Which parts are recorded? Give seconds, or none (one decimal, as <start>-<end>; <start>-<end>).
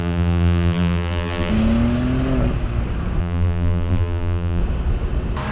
1.5-3.2; 4.6-5.5